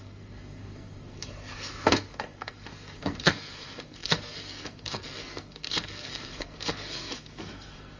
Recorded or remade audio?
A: remade